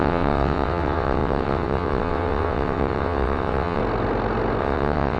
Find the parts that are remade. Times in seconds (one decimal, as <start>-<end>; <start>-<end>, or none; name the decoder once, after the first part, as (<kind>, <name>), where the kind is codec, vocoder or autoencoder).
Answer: 0.0-3.8 (vocoder, WaveNeXt); 4.6-5.2